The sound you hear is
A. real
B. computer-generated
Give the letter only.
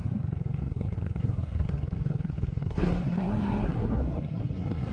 B